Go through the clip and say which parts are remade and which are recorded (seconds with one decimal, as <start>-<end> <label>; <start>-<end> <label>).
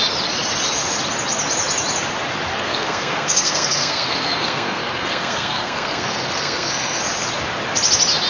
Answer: 0.0-2.5 recorded; 2.5-7.0 remade; 7.0-8.3 recorded